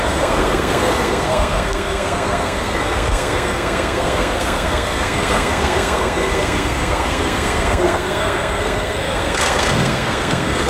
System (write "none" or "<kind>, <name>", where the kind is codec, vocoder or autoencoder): codec, SNAC